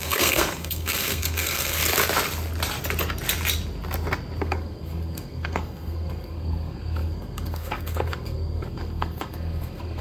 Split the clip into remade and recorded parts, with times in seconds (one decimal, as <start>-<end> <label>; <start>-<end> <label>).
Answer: 0.0-1.8 remade; 1.8-4.4 recorded; 4.4-10.0 remade